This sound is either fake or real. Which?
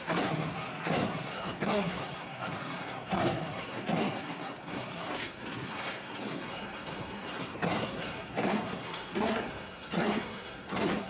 fake